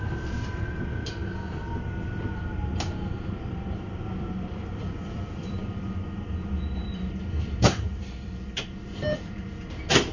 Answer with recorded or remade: remade